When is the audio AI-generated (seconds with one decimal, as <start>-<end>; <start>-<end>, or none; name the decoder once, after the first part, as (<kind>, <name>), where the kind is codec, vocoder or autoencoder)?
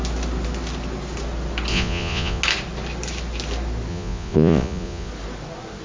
1.7-2.4 (vocoder, Vocos); 3.9-5.1